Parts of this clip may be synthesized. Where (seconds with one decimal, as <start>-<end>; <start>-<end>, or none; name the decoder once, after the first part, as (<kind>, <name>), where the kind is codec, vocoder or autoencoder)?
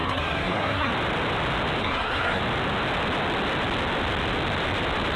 0.0-0.9 (codec, SNAC); 1.8-2.4